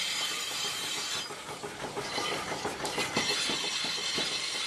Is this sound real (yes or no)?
no